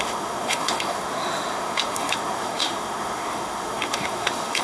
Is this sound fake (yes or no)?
yes